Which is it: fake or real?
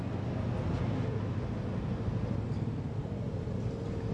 real